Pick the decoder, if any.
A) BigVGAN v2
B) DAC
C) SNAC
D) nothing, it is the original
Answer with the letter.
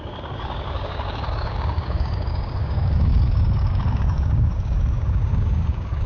B